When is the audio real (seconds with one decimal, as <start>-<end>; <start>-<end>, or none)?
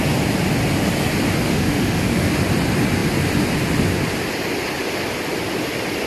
0.0-1.5; 2.3-6.1